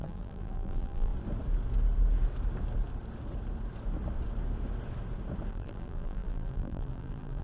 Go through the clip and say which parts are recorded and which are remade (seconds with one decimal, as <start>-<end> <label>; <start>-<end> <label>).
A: 0.0-1.1 remade; 1.1-5.5 recorded; 5.5-7.4 remade